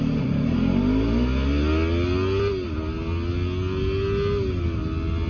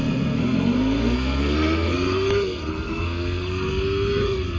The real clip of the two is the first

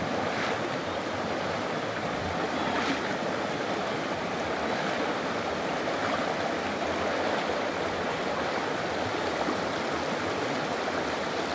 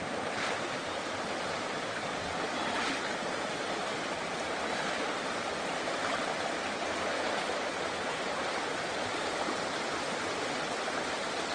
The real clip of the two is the first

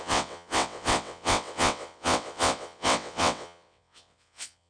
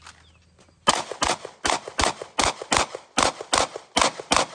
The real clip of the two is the second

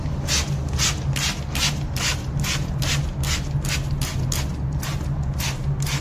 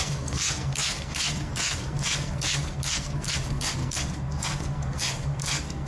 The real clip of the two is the first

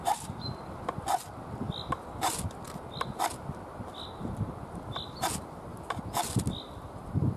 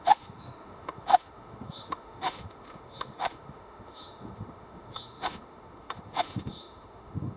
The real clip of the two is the first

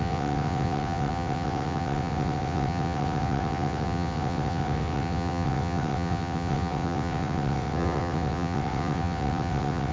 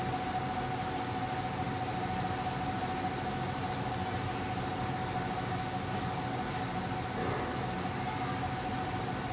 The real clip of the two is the second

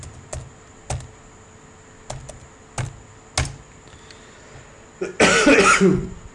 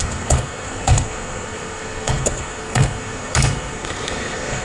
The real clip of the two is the first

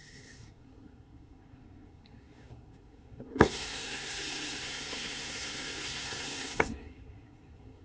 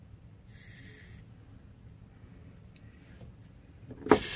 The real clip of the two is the second